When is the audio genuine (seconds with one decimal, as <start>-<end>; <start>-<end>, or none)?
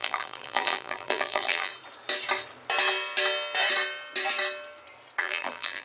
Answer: 1.7-5.2